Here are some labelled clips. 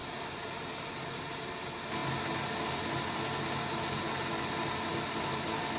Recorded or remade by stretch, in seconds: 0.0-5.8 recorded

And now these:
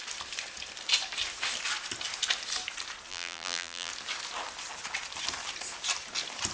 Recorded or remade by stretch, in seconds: 0.0-3.1 recorded; 3.1-3.9 remade; 3.9-6.5 recorded

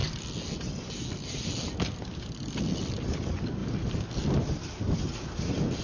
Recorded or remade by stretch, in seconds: 0.0-3.6 recorded; 3.6-4.3 remade; 4.3-5.8 recorded

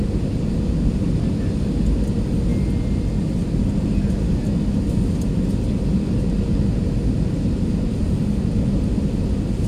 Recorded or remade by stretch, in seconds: 0.0-9.7 recorded

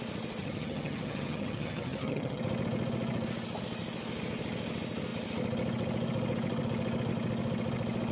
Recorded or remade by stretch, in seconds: 0.0-0.4 recorded; 0.4-2.4 remade; 2.4-8.1 recorded

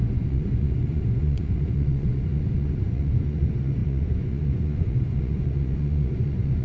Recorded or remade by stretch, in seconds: 0.0-6.6 remade

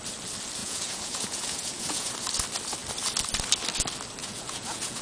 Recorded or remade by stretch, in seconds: 0.0-0.6 recorded; 0.6-2.1 remade; 2.1-4.2 recorded; 4.2-5.0 remade